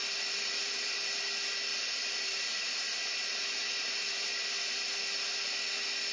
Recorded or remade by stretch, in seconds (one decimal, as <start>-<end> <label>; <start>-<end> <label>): 0.0-1.2 remade; 1.2-1.7 recorded; 1.7-3.4 remade; 3.4-6.1 recorded